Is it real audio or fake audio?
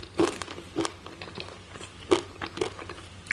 real